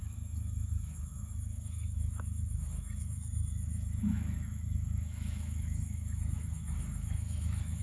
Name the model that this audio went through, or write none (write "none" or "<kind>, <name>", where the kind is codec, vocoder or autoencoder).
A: autoencoder, DAC-VAE